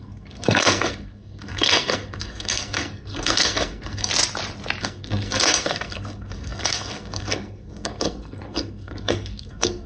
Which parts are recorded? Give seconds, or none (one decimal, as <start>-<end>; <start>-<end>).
4.1-4.8